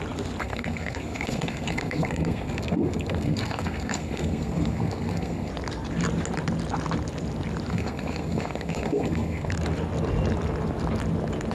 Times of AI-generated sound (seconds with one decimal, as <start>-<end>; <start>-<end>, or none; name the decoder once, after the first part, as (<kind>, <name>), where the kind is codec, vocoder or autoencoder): 0.4-5.5 (codec, SNAC); 7.7-9.5